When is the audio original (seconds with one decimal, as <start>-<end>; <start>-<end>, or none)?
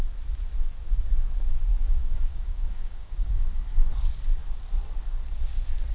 0.0-1.7; 3.3-5.9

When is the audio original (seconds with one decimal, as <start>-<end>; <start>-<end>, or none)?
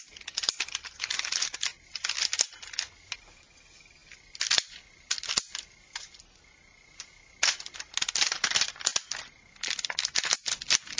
0.0-11.0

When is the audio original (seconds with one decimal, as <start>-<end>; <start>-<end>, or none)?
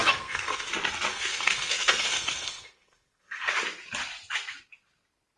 0.7-1.1; 3.5-5.4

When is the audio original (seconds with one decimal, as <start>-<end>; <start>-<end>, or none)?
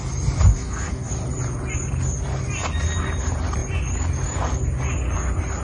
0.0-0.5; 1.1-5.6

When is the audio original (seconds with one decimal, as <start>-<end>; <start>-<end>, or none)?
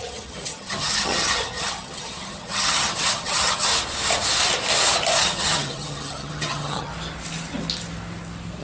3.7-5.2; 6.9-8.6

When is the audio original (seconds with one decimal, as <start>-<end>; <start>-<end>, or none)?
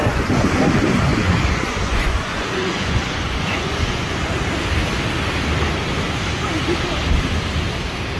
0.5-1.1; 4.3-8.2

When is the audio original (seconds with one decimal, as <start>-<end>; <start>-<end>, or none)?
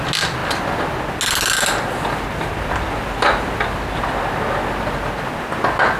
0.0-6.0